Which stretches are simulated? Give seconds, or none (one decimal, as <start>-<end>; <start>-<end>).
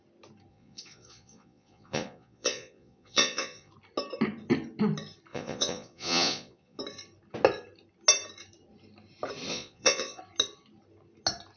0.5-3.7; 5.3-6.8; 9.5-10.2